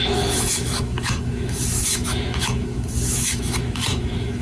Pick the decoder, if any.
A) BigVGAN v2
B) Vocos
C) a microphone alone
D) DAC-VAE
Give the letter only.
D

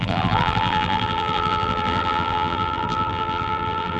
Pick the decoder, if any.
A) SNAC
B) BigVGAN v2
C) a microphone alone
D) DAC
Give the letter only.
B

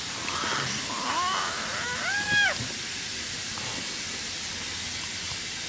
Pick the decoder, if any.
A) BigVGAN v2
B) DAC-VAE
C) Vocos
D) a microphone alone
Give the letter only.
D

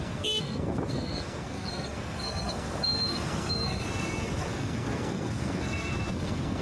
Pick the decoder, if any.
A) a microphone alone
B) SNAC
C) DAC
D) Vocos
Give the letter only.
B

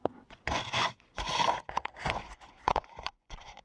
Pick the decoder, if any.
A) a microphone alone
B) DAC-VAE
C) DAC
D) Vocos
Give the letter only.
D